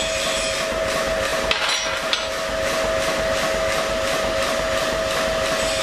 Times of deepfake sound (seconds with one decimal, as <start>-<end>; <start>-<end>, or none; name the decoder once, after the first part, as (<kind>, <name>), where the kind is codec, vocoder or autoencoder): none